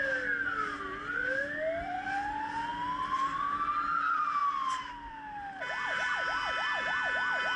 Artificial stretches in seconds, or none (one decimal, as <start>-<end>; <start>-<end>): none